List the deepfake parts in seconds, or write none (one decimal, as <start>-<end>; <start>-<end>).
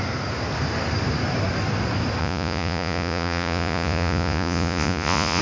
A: 2.2-5.4